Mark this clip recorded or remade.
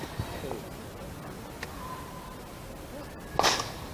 recorded